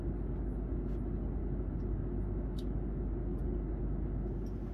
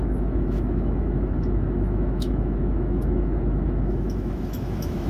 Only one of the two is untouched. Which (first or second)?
first